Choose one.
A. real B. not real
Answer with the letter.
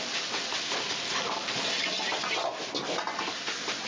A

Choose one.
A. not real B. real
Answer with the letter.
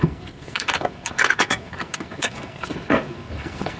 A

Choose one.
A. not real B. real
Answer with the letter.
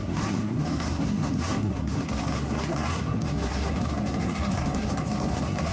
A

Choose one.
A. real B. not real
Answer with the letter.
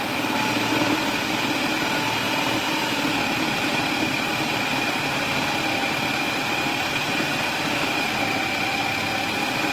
A